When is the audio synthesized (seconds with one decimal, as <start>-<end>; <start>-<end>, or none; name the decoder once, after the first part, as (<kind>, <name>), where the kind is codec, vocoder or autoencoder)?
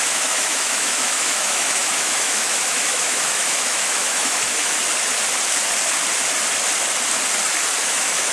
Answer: 0.0-4.8 (autoencoder, DAC-VAE); 7.8-8.3